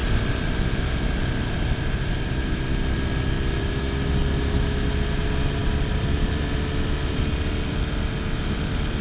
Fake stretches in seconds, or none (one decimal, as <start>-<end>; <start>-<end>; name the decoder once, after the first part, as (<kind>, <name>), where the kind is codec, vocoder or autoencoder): 0.0-1.8 (vocoder, BigVGAN v2); 5.6-6.5